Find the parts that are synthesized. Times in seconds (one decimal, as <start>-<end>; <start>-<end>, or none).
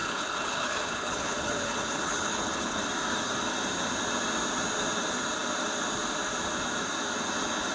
0.0-2.8